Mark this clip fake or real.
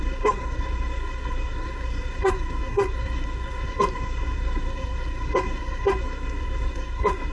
fake